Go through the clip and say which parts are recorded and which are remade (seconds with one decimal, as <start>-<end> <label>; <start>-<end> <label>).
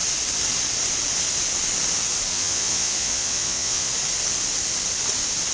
0.0-2.3 recorded; 2.3-3.9 remade; 3.9-5.5 recorded